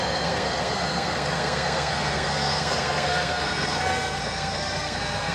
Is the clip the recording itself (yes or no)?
no